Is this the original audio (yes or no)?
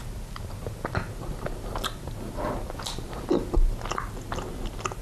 yes